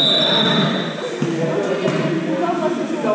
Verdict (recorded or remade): recorded